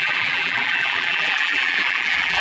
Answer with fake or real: fake